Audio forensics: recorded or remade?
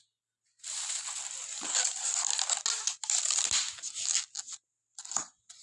recorded